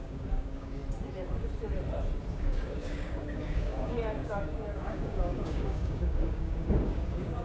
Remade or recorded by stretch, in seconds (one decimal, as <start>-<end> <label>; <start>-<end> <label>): 0.0-0.8 remade; 0.8-2.3 recorded; 2.3-7.4 remade